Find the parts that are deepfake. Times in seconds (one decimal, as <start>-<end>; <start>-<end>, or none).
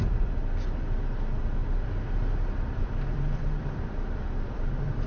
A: 1.6-5.1